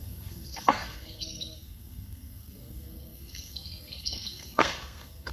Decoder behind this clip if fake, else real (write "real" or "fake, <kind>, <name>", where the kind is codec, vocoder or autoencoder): fake, codec, SNAC